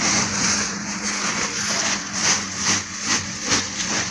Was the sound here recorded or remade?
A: remade